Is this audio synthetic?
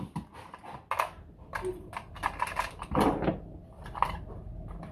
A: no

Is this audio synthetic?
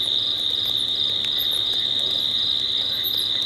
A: no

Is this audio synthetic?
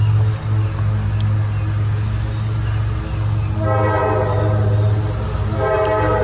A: no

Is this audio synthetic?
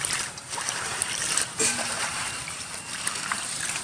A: yes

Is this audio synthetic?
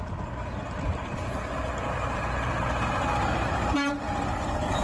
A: no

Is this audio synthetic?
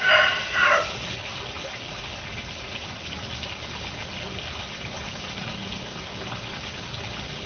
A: no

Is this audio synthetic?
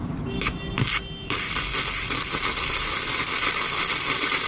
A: no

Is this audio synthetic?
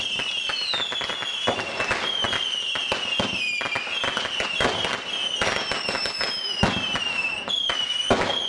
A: no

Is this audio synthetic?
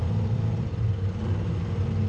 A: no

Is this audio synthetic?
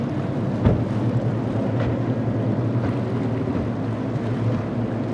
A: no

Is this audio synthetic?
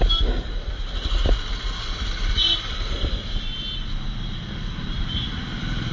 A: no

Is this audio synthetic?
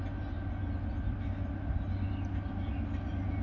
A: no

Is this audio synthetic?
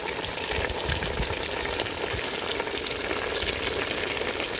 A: no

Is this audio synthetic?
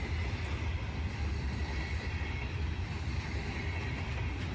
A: yes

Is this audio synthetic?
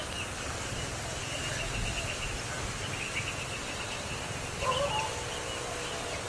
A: no